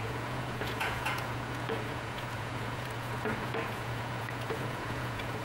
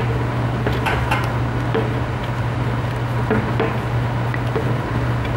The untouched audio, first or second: second